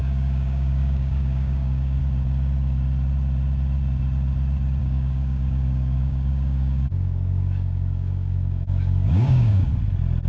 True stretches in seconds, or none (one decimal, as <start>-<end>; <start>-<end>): 2.0-4.8; 9.7-10.3